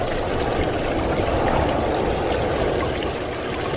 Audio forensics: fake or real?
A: real